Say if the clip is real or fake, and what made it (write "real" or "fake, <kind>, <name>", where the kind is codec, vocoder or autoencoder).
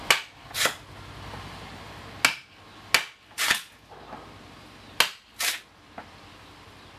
real